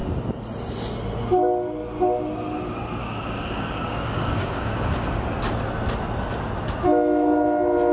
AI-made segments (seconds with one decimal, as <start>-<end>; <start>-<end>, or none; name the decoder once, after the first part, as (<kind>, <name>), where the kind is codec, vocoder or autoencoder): 3.0-4.9 (codec, DAC)